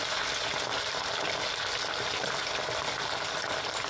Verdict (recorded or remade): recorded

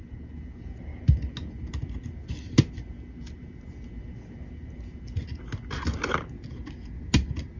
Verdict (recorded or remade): recorded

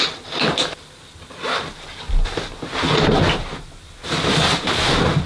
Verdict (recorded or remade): recorded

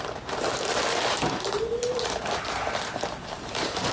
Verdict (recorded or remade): remade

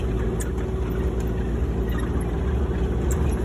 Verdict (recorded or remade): recorded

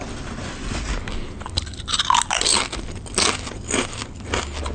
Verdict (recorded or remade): recorded